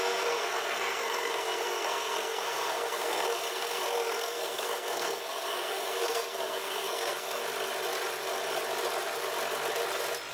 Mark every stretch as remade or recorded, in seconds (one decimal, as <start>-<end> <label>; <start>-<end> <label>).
0.0-7.4 remade; 7.4-10.3 recorded